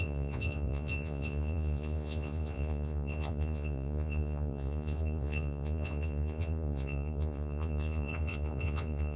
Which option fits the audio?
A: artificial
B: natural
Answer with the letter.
A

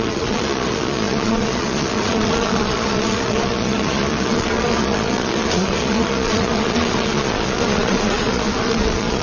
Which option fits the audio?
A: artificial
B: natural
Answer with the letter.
A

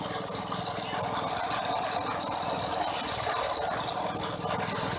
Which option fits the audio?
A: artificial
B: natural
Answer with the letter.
B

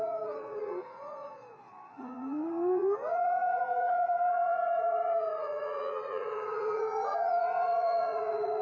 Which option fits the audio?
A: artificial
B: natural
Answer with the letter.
A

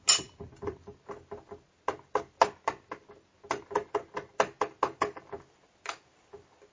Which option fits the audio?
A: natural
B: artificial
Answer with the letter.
A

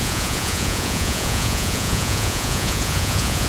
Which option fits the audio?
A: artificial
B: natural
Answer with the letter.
A